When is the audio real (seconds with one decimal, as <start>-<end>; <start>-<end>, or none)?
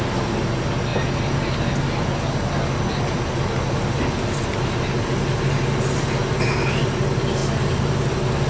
0.0-8.5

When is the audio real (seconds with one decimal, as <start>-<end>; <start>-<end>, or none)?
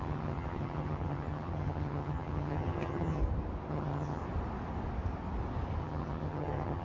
3.2-3.7; 4.2-5.8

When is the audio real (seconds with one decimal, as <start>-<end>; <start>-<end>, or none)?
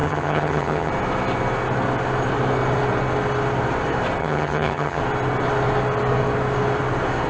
0.9-4.2; 5.0-7.3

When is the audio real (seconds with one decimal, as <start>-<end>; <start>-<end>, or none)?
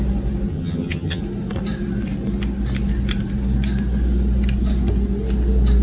0.0-0.5; 1.2-5.8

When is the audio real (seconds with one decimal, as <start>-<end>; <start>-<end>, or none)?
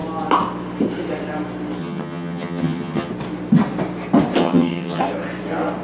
0.0-1.8; 3.1-4.4; 5.0-5.8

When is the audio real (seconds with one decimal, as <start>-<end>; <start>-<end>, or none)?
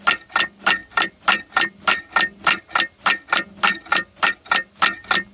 0.0-5.3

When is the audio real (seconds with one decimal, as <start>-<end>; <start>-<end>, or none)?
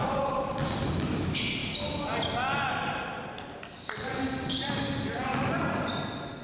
0.0-6.4